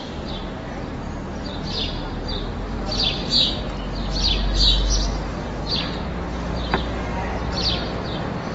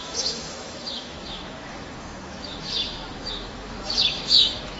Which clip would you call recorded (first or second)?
first